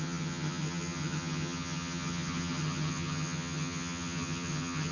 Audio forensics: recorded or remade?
remade